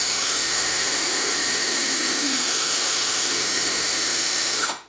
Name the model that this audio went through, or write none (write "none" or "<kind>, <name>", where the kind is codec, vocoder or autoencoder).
autoencoder, DAC-VAE